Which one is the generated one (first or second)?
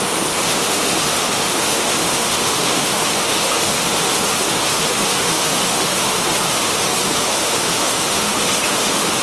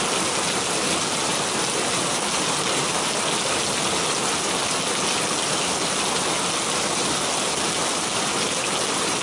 first